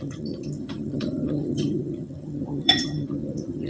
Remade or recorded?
remade